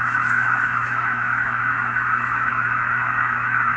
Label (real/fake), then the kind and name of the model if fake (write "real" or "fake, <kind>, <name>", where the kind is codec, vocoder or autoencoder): fake, autoencoder, DAC-VAE